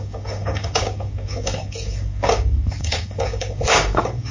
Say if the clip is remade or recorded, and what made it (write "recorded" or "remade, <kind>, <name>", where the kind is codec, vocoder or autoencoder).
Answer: remade, codec, DAC